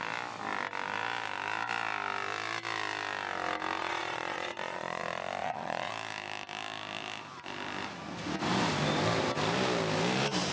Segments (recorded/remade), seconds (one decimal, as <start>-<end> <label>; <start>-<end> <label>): 0.0-3.8 recorded; 3.8-5.0 remade; 5.0-5.4 recorded; 5.4-5.9 remade; 5.9-10.5 recorded